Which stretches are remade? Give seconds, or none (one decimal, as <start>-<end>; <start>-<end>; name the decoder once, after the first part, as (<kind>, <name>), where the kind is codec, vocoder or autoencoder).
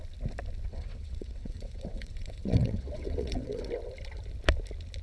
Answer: 0.7-3.7 (vocoder, WaveNeXt)